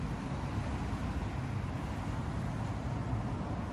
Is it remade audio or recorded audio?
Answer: recorded